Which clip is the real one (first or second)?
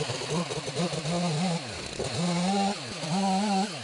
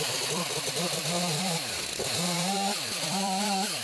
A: first